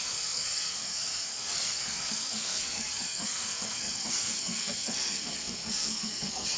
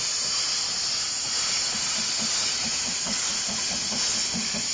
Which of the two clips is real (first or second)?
second